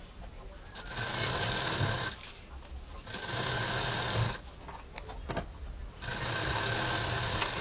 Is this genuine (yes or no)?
yes